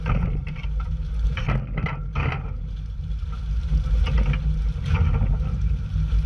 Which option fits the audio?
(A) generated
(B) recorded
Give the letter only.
B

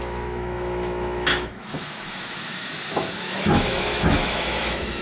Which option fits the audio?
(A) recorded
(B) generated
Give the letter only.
B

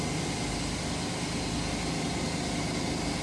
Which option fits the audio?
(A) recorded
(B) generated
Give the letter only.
A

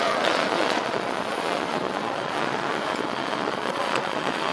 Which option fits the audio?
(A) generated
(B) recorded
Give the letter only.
A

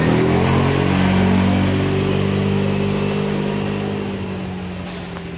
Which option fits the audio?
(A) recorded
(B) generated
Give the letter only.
A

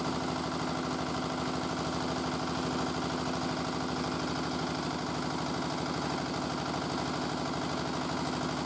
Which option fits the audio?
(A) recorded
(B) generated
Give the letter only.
A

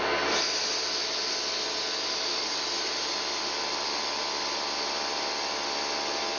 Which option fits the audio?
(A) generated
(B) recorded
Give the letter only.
B